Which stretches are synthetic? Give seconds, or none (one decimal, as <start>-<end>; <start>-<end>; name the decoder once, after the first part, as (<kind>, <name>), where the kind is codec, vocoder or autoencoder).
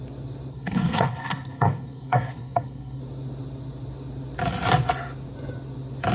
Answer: 0.5-3.0 (codec, SNAC)